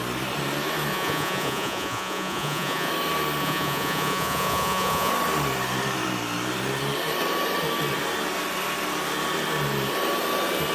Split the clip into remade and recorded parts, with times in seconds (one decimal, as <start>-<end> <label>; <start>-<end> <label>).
0.0-0.9 recorded; 0.9-2.9 remade; 2.9-3.4 recorded; 3.4-5.1 remade; 5.1-10.7 recorded